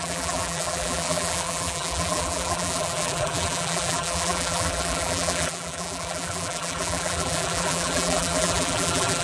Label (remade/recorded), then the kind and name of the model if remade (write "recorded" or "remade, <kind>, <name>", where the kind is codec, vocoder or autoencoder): remade, vocoder, BigVGAN v2